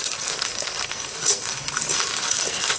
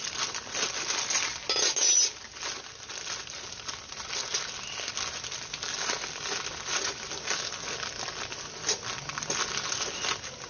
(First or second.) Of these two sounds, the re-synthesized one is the first